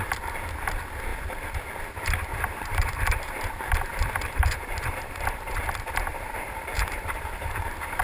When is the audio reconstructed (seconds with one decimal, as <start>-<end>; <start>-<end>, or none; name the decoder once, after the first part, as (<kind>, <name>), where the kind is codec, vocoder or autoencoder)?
2.3-5.5 (vocoder, BigVGAN v2); 6.1-8.0